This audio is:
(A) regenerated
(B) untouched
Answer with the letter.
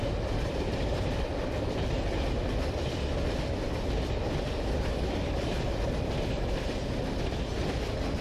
B